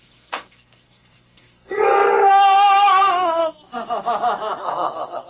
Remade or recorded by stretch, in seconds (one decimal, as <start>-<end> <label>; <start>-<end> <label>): 0.0-3.4 remade; 3.4-4.6 recorded; 4.6-5.3 remade